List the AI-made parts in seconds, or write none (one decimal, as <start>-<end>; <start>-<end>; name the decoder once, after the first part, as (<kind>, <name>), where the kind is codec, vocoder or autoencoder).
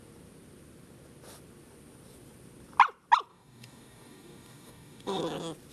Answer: 3.3-5.2 (codec, DAC)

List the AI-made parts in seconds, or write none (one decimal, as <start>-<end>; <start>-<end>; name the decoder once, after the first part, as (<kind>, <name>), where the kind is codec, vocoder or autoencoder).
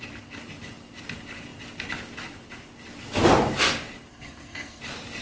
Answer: 4.1-4.8 (codec, SNAC)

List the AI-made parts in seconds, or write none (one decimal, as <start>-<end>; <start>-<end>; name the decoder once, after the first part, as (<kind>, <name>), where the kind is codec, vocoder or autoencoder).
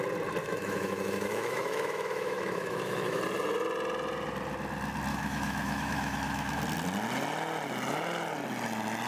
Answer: 0.4-3.2 (autoencoder, DAC-VAE); 5.1-6.6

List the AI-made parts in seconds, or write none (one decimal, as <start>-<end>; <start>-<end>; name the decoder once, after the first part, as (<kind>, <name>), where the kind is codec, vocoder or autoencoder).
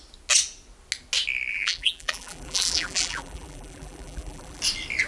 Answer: 1.5-4.6 (vocoder, BigVGAN v2)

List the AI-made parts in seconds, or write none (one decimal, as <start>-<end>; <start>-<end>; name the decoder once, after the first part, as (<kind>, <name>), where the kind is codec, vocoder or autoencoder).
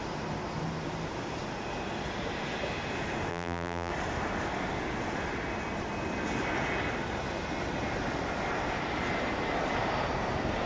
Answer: 3.3-3.9 (vocoder, BigVGAN v2)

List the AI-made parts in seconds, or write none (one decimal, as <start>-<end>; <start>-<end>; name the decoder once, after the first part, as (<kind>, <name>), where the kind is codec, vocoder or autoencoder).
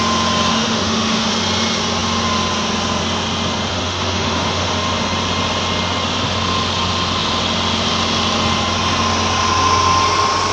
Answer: 0.5-1.3 (autoencoder, DAC-VAE); 3.7-4.7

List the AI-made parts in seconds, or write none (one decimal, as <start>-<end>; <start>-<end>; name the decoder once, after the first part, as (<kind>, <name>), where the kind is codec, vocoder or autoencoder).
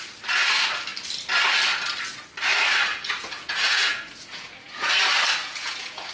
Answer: 2.9-4.9 (vocoder, Vocos); 5.4-6.1